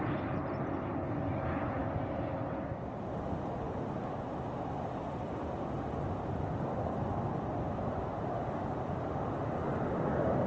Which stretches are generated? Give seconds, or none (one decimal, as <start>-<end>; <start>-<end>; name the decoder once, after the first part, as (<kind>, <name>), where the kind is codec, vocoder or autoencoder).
none